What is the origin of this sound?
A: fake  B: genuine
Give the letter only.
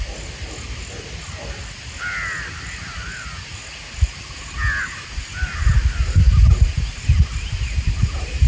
B